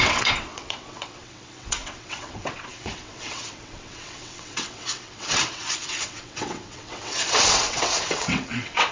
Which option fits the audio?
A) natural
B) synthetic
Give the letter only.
B